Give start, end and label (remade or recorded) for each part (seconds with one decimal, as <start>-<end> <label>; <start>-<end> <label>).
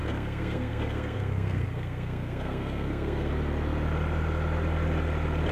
0.0-3.3 remade; 3.3-5.5 recorded